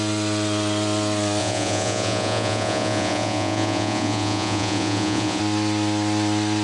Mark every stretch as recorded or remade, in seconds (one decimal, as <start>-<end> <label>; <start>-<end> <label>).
0.0-1.4 recorded; 1.4-5.4 remade; 5.4-6.6 recorded